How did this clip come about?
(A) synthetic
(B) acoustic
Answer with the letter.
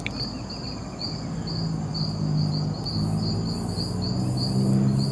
B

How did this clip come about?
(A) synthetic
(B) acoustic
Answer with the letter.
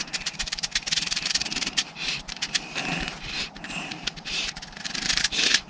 A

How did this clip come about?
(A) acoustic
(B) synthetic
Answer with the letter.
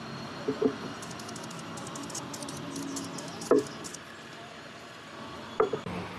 A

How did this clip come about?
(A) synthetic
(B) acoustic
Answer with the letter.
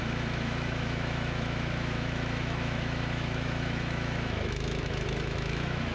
A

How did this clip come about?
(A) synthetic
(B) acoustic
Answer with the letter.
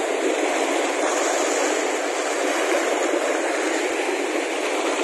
B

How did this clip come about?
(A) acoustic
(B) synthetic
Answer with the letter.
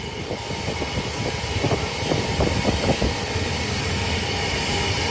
A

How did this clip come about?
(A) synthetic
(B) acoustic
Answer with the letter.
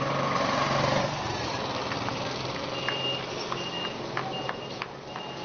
B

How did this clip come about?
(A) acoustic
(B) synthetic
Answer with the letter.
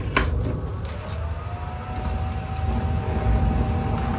A